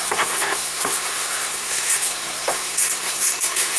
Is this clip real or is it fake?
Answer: fake